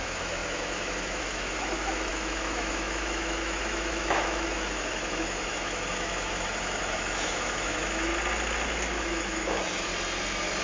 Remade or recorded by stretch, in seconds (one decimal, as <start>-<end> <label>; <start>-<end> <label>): 0.0-8.1 remade; 8.1-9.0 recorded; 9.0-9.9 remade; 9.9-10.6 recorded